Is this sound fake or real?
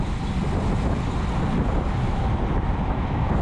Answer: real